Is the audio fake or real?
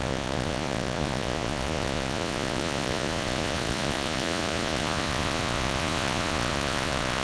fake